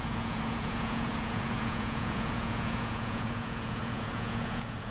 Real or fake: fake